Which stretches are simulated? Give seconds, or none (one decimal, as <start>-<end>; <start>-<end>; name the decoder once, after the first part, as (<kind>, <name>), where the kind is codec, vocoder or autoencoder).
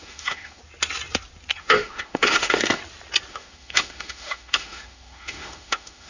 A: 0.0-0.6 (autoencoder, DAC-VAE); 1.6-2.8; 3.3-6.1